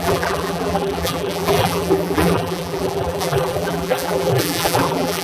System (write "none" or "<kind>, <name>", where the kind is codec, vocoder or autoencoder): vocoder, BigVGAN v2